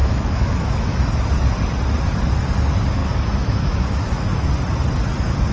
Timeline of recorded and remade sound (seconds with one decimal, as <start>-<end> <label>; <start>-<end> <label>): 0.0-1.0 remade; 1.0-3.0 recorded; 3.0-4.5 remade; 4.5-5.5 recorded